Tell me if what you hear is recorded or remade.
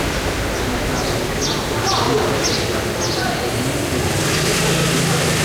recorded